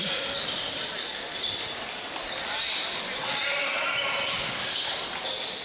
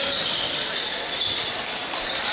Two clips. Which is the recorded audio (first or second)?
second